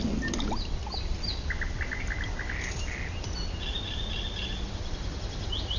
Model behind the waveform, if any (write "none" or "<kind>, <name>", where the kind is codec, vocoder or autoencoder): none